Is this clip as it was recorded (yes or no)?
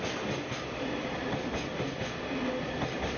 yes